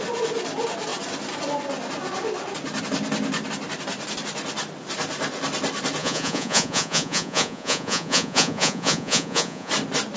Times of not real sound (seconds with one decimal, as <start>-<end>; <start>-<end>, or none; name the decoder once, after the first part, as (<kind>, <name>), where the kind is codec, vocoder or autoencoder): 6.0-9.7 (vocoder, Vocos)